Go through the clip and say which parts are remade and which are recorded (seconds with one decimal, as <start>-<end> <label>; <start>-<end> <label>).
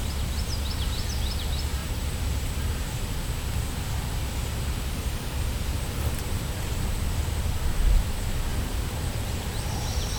0.0-1.8 recorded; 1.8-2.4 remade; 2.4-8.5 recorded; 8.5-10.2 remade